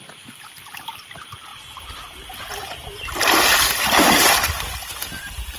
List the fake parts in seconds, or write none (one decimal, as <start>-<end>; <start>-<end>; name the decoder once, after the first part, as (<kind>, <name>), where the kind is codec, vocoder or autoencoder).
none